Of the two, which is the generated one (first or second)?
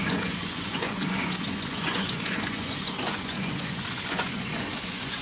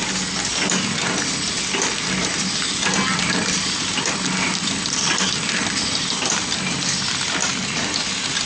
first